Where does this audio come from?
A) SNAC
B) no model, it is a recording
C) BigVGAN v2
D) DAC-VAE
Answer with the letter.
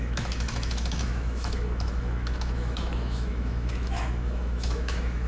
D